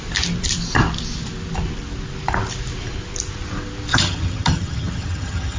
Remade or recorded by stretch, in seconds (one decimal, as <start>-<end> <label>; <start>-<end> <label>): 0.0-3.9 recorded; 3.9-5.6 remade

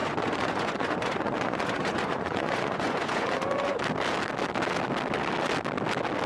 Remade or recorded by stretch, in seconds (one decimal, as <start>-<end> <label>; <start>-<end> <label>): 0.0-3.8 remade; 3.8-6.3 recorded

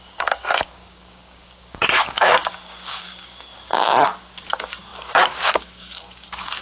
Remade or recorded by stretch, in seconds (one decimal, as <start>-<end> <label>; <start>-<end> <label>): 0.0-6.6 remade

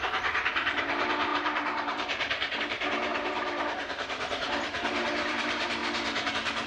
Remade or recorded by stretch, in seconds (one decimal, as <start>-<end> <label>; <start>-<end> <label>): 0.0-5.8 remade; 5.8-6.3 recorded; 6.3-6.7 remade

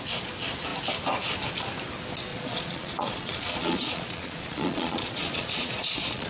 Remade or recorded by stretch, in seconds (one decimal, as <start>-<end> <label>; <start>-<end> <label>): 0.0-2.3 recorded; 2.3-6.3 remade

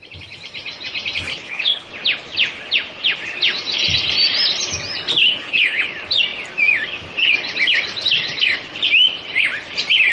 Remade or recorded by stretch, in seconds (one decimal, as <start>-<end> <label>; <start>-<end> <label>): 0.0-1.3 recorded; 1.3-1.9 remade; 1.9-5.2 recorded; 5.2-5.8 remade; 5.8-10.1 recorded